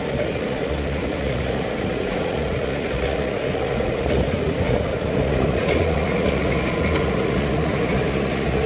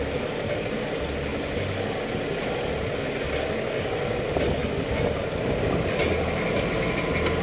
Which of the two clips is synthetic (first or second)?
first